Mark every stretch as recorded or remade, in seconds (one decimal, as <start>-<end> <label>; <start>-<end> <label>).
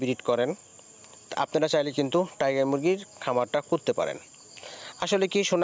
0.0-5.6 recorded